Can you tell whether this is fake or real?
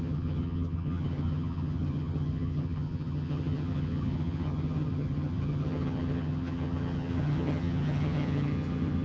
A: fake